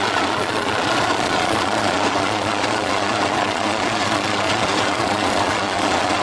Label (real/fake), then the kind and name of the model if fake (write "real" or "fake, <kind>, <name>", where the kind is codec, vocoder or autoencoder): fake, vocoder, Vocos